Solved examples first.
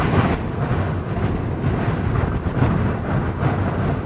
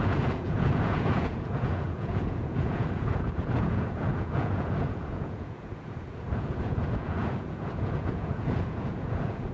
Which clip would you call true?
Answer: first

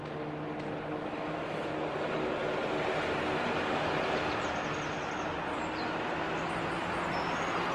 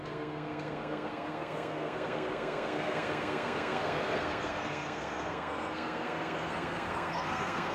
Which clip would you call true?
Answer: first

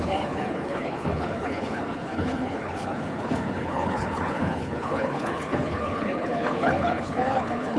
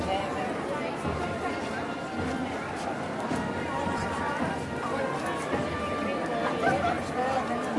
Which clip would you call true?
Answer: second